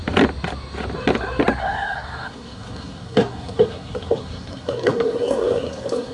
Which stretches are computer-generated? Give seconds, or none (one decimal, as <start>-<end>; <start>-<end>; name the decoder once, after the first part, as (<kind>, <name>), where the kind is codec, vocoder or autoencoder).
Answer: 1.6-6.1 (codec, SNAC)